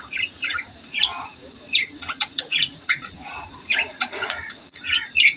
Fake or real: fake